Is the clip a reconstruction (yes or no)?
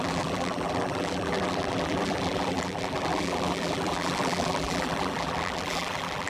yes